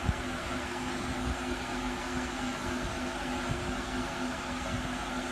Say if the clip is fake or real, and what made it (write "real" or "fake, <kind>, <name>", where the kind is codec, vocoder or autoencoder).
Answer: fake, codec, SNAC